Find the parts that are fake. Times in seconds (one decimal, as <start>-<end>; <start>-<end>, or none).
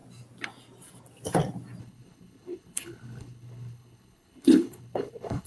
1.8-5.5